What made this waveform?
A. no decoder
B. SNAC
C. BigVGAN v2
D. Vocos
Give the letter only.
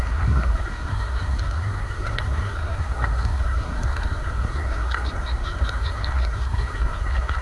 B